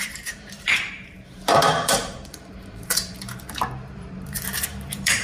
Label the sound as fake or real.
fake